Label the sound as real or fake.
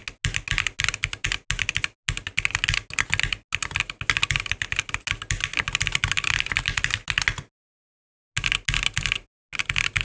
real